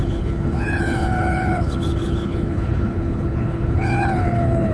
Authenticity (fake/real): fake